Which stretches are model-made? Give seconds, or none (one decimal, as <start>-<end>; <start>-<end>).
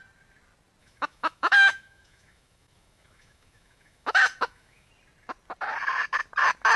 0.8-4.9